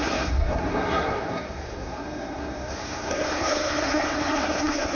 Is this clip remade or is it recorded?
remade